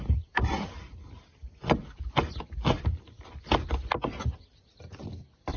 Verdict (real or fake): real